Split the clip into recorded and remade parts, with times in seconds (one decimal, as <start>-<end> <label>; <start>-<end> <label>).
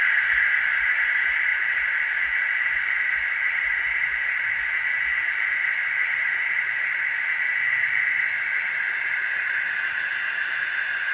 0.0-11.1 recorded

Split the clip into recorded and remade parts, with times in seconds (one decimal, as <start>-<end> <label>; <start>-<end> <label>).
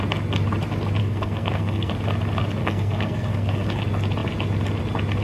0.0-1.0 recorded; 1.0-1.9 remade; 1.9-2.6 recorded; 2.6-3.8 remade; 3.8-5.2 recorded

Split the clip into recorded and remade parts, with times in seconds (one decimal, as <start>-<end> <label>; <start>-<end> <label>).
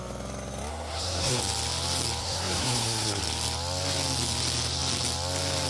0.0-0.7 recorded; 0.7-1.4 remade; 1.4-2.2 recorded; 2.2-3.2 remade; 3.2-5.7 recorded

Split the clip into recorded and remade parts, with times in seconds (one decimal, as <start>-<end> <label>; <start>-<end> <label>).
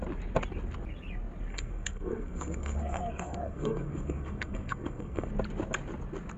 0.0-1.5 recorded; 1.5-5.3 remade; 5.3-6.4 recorded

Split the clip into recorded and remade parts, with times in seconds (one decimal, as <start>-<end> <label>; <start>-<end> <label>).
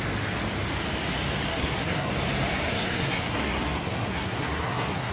0.0-1.5 recorded; 1.5-2.1 remade; 2.1-2.7 recorded; 2.7-5.1 remade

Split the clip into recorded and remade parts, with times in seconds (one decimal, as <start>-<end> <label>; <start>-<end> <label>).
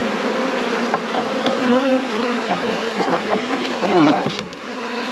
0.0-1.4 recorded; 1.4-5.1 remade